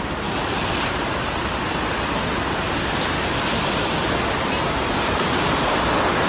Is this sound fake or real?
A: real